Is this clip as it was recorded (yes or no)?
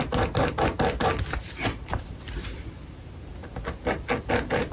yes